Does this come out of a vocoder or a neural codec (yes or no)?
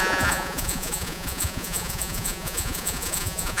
yes